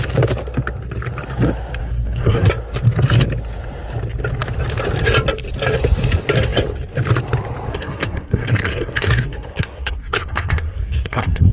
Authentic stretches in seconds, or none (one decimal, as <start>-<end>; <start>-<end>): 0.0-1.8; 2.5-7.7